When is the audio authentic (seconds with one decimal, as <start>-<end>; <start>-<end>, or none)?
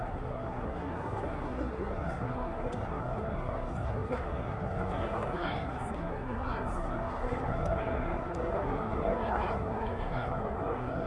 none